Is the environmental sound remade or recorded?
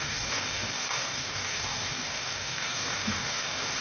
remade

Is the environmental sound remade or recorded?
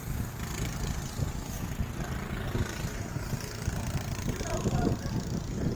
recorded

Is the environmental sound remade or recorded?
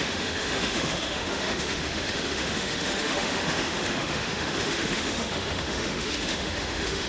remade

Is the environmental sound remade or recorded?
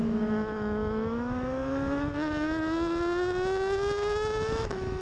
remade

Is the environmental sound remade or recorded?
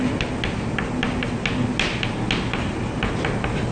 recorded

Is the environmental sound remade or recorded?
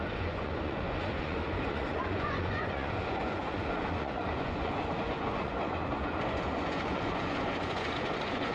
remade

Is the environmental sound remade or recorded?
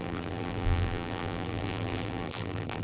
remade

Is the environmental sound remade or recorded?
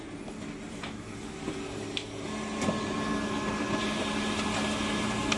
recorded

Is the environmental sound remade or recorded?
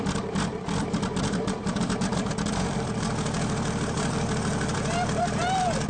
remade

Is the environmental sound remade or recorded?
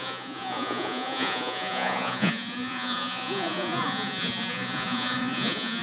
remade